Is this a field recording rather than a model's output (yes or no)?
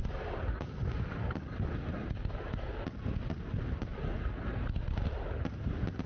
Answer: yes